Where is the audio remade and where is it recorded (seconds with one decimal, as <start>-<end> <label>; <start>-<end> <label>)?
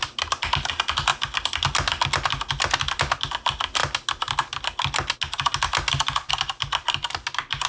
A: 0.0-7.7 recorded